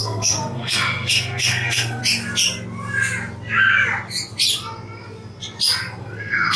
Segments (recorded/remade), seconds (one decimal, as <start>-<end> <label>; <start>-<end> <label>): 0.0-2.0 remade; 2.0-6.0 recorded; 6.0-6.6 remade